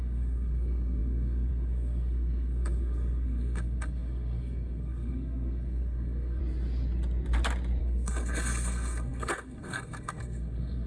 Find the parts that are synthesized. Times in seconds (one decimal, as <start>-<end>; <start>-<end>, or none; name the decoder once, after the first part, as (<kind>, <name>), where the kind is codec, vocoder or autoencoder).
0.0-6.4 (codec, SNAC); 7.8-10.9